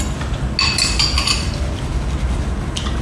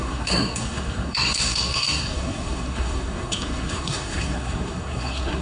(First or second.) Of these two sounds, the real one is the first